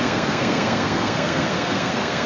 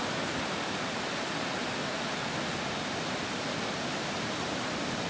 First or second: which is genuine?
second